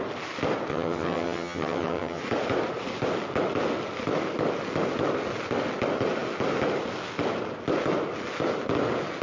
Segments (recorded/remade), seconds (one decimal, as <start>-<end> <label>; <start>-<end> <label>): 0.0-0.7 recorded; 0.7-2.2 remade; 2.2-9.2 recorded